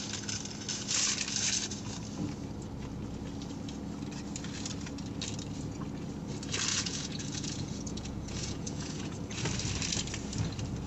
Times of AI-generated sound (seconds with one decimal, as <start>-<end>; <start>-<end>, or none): 6.7-9.2